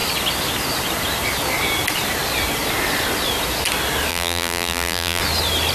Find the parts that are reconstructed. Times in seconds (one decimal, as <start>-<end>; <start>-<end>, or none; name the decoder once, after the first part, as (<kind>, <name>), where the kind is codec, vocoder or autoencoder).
4.1-5.2 (vocoder, BigVGAN v2)